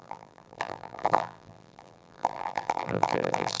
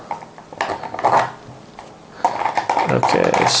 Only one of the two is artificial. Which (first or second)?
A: first